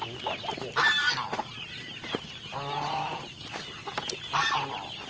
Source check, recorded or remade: recorded